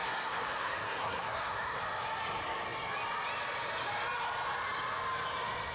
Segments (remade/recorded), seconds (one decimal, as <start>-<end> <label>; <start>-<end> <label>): 0.0-1.8 remade; 1.8-5.7 recorded